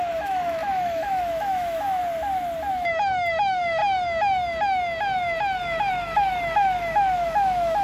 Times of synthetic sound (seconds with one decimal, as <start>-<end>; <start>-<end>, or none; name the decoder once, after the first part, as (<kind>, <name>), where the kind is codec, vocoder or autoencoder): 0.0-2.0 (autoencoder, DAC-VAE); 2.7-3.8; 5.9-7.8